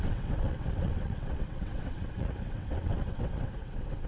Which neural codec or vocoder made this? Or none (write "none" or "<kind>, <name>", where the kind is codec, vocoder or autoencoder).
vocoder, WaveNeXt